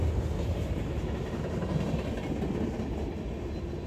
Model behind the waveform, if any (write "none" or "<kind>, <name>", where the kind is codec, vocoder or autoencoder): none